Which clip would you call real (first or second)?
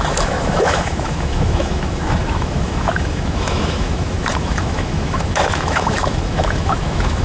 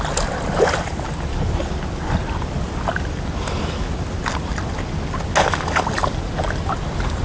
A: second